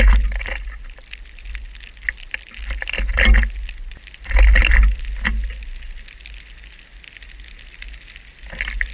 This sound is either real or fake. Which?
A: real